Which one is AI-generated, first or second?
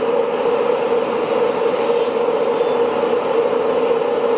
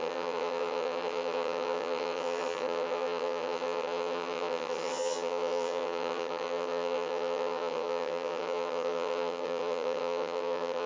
second